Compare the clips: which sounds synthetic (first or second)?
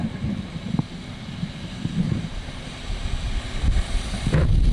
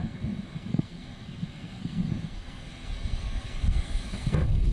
second